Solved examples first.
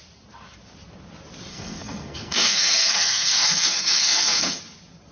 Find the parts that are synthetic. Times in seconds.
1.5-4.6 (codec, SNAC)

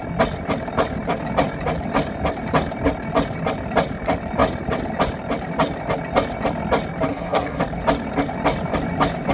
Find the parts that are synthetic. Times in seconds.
7.1-7.6 (codec, SNAC)

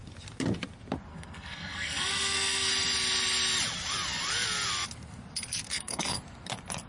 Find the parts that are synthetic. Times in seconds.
1.1-2.7 (codec, SNAC); 5.7-6.2